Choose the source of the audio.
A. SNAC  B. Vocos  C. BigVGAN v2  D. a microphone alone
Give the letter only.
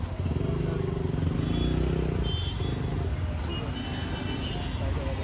D